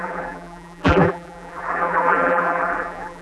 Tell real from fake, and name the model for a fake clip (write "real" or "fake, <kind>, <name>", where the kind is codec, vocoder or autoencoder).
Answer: fake, vocoder, BigVGAN v2